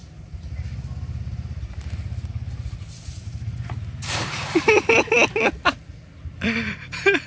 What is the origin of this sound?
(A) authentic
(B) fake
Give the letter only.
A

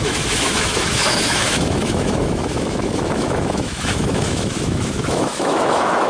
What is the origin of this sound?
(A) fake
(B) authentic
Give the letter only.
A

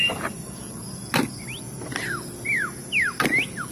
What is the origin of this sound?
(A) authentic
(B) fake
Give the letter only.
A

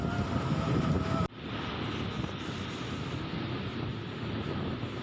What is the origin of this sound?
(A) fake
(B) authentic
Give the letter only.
B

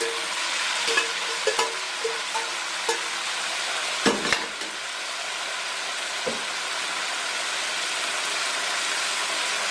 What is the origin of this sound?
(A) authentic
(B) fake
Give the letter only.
A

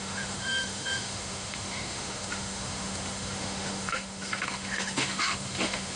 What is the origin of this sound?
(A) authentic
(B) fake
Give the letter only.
B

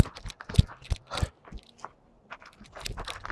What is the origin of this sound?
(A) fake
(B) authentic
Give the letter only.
B